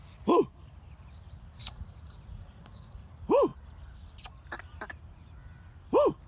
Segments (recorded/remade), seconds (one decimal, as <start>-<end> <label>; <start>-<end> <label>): 0.0-1.6 recorded; 1.6-3.1 remade; 3.1-6.3 recorded